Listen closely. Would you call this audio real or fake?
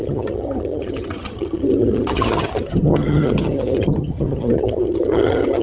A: fake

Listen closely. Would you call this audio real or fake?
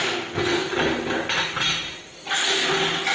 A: real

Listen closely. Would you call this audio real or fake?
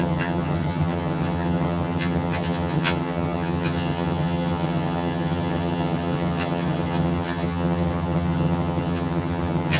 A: fake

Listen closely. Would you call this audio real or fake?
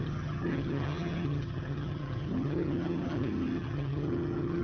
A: fake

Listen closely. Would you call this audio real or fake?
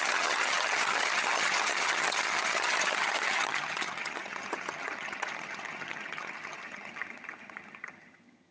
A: fake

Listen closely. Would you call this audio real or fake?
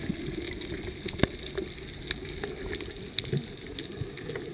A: real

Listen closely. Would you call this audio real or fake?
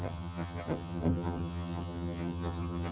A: fake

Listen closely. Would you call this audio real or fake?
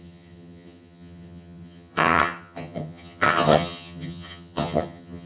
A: fake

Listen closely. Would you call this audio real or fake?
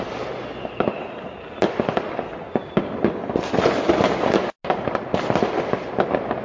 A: real